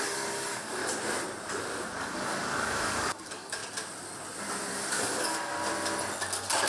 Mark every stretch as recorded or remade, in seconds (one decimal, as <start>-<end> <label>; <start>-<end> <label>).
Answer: 0.0-0.8 remade; 0.8-2.0 recorded; 2.0-3.6 remade; 3.6-4.7 recorded; 4.7-5.5 remade; 5.5-6.7 recorded